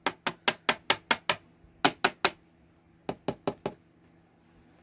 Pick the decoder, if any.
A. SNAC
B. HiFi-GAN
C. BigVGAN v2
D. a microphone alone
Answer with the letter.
D